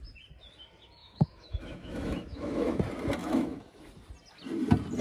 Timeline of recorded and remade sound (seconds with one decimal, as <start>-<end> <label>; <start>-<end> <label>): 0.0-1.0 recorded; 1.0-2.8 remade; 2.8-3.2 recorded; 3.2-3.8 remade; 3.8-5.0 recorded